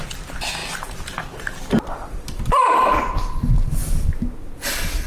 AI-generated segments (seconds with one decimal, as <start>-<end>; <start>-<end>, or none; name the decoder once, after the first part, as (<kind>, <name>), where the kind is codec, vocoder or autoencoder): none